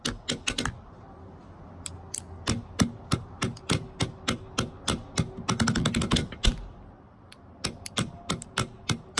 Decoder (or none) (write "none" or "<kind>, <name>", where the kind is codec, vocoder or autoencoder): none